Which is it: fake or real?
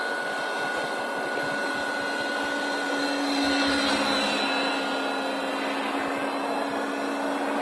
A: real